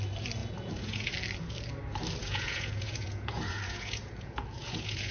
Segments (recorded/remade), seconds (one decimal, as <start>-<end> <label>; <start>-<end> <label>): 0.0-0.4 recorded; 0.4-1.1 remade; 1.1-2.2 recorded; 2.2-5.1 remade